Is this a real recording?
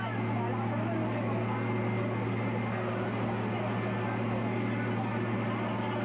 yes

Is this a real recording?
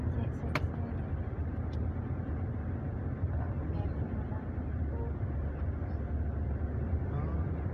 yes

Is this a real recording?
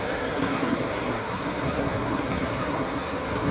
no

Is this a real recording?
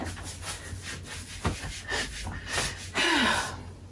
yes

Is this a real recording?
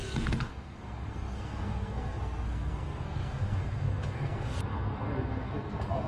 no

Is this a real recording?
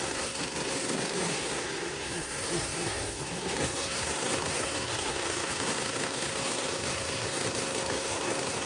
no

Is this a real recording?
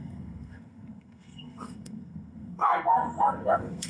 no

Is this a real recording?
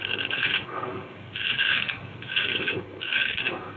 no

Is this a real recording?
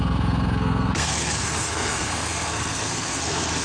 no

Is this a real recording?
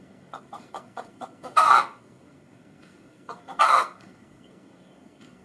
no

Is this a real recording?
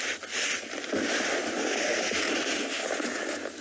yes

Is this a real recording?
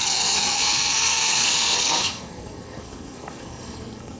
no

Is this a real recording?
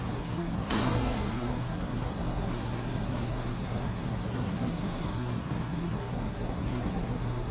no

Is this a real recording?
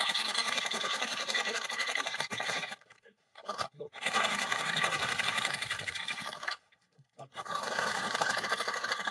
no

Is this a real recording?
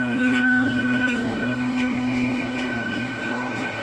no